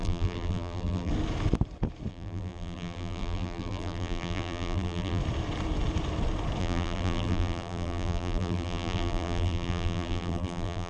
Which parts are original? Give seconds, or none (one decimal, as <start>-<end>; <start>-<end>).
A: 1.1-2.1; 5.2-6.6